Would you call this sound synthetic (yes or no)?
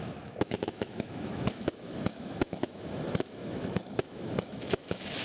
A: yes